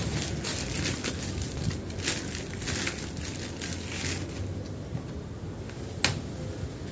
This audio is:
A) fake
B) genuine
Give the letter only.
B